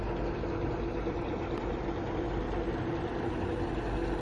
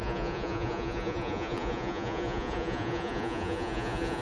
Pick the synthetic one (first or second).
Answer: second